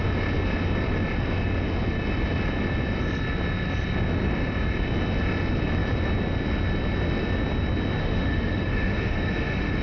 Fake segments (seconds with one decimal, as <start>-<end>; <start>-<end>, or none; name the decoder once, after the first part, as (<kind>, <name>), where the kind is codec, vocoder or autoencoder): 8.0-9.8 (autoencoder, DAC-VAE)

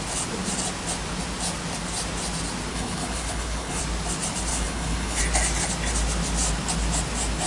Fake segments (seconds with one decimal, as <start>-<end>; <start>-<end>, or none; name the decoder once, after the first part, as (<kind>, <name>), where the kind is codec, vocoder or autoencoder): 2.7-3.8 (codec, HILCodec); 4.5-5.2

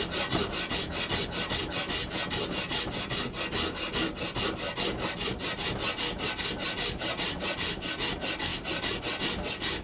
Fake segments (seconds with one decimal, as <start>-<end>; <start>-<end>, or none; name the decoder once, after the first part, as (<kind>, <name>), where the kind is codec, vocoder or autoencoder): none